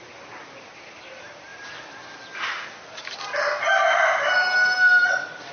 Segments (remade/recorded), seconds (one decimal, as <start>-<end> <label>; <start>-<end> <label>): 0.0-5.5 recorded